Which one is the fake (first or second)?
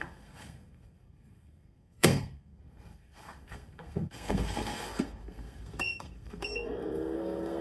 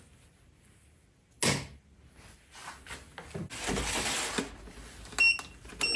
first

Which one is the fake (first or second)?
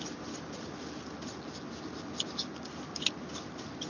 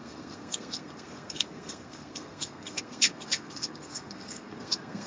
second